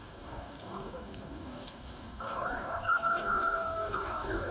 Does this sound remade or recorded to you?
remade